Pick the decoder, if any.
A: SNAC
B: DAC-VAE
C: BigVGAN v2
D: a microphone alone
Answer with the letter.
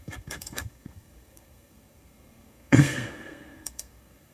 A